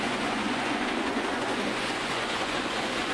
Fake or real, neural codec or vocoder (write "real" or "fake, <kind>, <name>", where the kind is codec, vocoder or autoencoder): fake, vocoder, Vocos